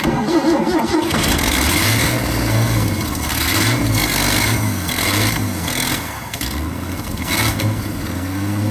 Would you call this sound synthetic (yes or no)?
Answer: yes